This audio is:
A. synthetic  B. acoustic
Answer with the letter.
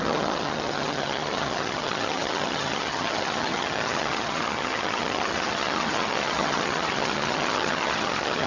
A